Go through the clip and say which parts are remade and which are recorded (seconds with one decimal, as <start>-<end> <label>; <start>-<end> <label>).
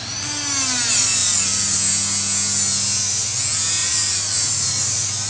0.0-1.2 recorded; 1.2-1.8 remade; 1.8-3.8 recorded; 3.8-5.3 remade